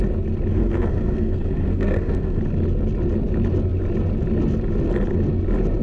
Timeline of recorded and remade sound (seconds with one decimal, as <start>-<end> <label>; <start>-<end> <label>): 0.0-0.5 recorded; 0.5-2.4 remade; 2.4-5.8 recorded